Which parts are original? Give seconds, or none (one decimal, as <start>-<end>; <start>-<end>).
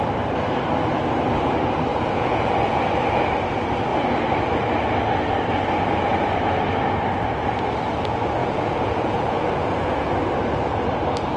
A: 0.0-1.9; 2.8-8.4; 10.1-11.4